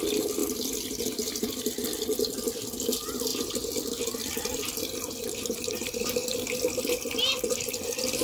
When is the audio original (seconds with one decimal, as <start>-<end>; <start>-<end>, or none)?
0.0-8.2